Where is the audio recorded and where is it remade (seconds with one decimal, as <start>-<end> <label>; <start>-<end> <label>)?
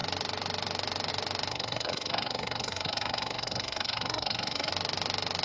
0.0-1.5 recorded; 1.5-4.7 remade; 4.7-5.4 recorded